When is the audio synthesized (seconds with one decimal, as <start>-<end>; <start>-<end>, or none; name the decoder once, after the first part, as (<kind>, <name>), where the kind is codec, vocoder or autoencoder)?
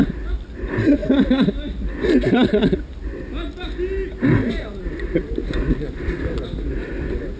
none